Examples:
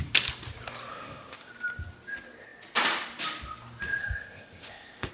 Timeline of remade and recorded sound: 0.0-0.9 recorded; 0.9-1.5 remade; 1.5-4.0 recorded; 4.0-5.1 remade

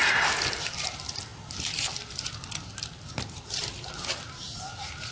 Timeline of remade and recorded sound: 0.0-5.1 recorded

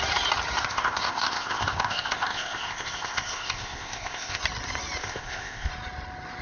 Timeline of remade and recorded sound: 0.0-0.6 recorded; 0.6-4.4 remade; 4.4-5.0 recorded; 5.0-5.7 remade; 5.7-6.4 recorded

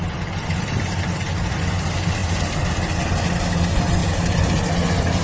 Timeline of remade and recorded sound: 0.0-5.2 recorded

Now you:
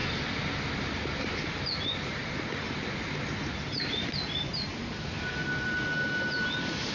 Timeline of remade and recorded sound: 0.0-6.9 recorded